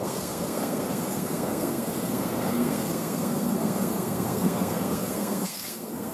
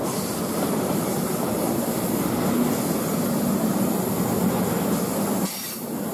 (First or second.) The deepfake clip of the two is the first